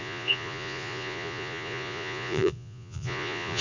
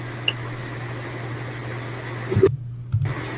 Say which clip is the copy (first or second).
first